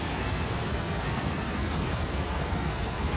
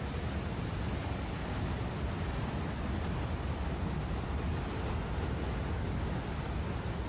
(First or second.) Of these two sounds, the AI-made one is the first